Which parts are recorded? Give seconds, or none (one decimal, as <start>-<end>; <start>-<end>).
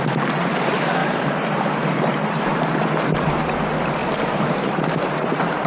0.0-1.0; 2.4-4.0; 4.7-5.7